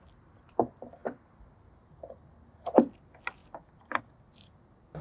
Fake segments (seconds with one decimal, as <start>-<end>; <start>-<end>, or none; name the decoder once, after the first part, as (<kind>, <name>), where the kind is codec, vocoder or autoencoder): none